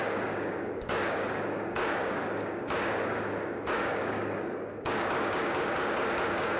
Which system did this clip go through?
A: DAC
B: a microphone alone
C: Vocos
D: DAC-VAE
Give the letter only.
A